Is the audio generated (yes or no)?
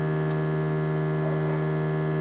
no